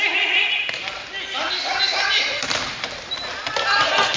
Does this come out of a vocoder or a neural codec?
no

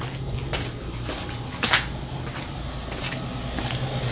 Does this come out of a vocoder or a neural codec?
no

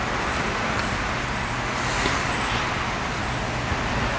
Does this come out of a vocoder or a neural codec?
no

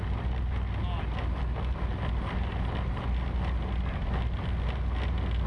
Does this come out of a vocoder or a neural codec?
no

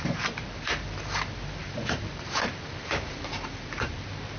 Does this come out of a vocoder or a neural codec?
no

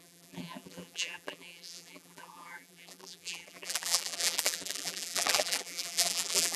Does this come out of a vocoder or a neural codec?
yes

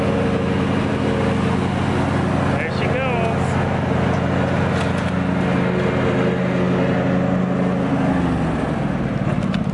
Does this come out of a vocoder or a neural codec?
no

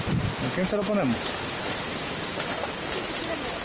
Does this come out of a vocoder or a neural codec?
yes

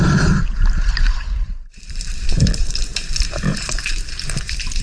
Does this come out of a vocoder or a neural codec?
yes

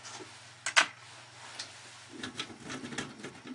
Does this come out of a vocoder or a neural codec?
no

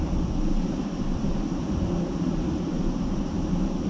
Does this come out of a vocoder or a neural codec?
yes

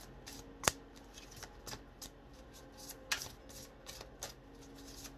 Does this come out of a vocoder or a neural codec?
no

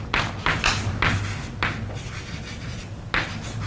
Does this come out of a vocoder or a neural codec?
no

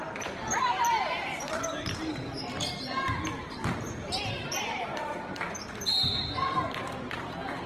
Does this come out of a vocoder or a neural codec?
yes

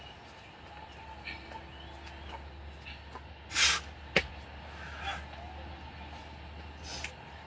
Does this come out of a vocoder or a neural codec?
no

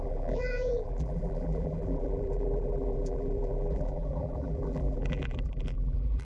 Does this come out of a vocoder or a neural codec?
yes